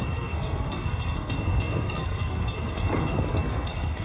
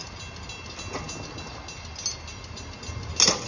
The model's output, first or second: first